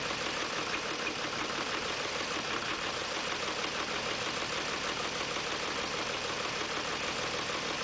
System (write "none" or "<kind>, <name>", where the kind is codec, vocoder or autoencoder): vocoder, BigVGAN v2